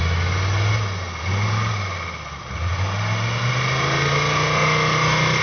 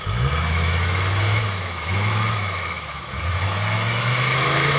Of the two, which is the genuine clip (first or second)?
first